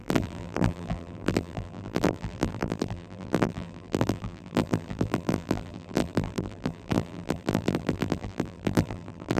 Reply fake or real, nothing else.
fake